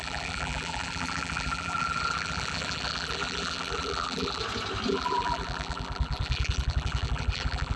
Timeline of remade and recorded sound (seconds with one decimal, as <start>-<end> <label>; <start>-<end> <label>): 0.0-4.4 remade; 4.4-4.9 recorded; 4.9-7.8 remade